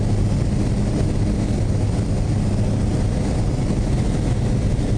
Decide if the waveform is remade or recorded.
recorded